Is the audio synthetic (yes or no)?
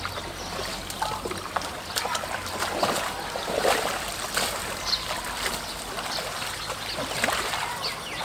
no